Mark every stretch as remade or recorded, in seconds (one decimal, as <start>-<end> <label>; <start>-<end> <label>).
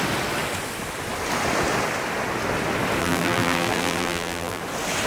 0.0-3.0 recorded; 3.0-4.6 remade; 4.6-5.1 recorded